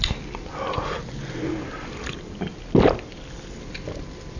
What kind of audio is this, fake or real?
real